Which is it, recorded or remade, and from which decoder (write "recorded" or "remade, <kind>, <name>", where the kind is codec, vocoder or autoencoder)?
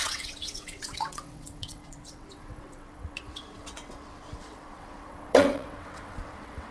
remade, vocoder, WaveNeXt